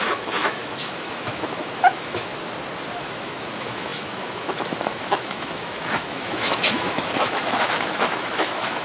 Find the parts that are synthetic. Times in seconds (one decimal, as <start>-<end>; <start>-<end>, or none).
0.0-2.3; 3.0-8.8